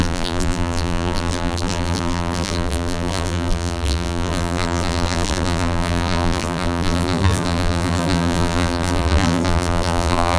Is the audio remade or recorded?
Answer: remade